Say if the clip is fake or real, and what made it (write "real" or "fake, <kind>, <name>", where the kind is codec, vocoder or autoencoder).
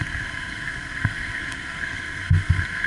fake, codec, SNAC